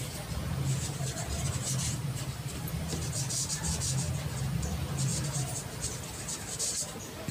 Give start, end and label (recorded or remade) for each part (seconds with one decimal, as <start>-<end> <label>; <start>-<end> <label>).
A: 0.0-0.5 recorded; 0.5-2.8 remade; 2.8-5.1 recorded; 5.1-6.8 remade; 6.8-7.3 recorded